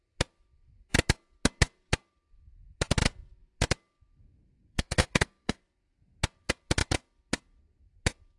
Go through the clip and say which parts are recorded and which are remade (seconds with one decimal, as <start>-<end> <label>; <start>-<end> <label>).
0.0-4.7 recorded; 4.7-5.6 remade; 5.6-8.4 recorded